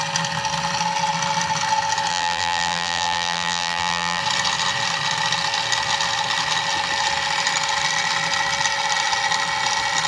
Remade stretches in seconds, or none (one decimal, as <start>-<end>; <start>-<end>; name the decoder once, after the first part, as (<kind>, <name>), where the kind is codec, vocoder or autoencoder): 2.1-4.2 (vocoder, BigVGAN v2)